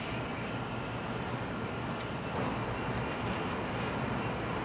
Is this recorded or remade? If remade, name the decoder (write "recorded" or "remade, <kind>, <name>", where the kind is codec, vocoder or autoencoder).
recorded